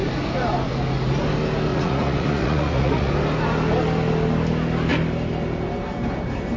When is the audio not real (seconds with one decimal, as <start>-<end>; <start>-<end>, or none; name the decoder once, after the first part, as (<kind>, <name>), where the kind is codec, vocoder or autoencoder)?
1.7-3.1 (vocoder, Vocos)